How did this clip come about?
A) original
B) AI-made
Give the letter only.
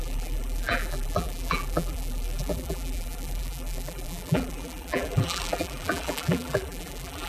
B